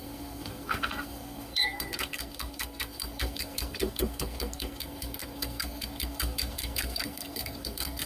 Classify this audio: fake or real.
fake